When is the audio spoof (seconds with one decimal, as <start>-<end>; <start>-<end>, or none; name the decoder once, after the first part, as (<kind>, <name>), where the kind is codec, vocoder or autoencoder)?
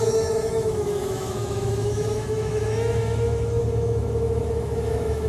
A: 0.0-5.3 (autoencoder, DAC-VAE)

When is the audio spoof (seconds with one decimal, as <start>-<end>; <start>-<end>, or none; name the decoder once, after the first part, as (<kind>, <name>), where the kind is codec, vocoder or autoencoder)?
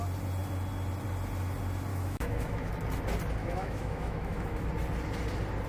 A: 1.9-2.7 (autoencoder, DAC-VAE); 3.4-4.7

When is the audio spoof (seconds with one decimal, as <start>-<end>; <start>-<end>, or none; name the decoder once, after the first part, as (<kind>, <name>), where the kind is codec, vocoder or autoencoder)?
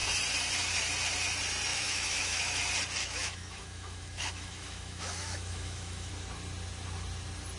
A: 1.7-2.6 (autoencoder, DAC-VAE); 3.0-6.1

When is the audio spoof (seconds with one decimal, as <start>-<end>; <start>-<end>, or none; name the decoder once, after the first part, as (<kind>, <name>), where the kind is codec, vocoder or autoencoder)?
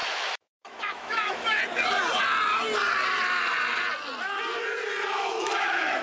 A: 0.0-1.6 (autoencoder, DAC-VAE); 5.2-6.0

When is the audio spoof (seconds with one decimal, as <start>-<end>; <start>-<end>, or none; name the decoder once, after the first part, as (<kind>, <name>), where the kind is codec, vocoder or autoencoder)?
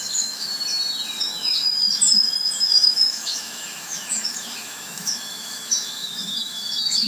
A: 0.0-0.5 (autoencoder, DAC-VAE); 1.2-1.6; 2.7-7.1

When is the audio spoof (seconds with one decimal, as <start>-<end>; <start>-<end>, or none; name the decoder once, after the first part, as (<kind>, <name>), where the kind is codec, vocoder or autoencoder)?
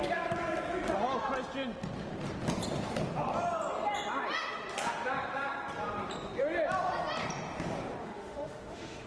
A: 8.0-9.1 (autoencoder, DAC-VAE)